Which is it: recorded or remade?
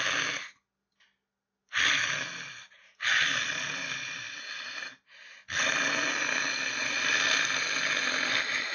recorded